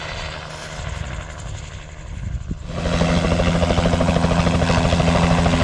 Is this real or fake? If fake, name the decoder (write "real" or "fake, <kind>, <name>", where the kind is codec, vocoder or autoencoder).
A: real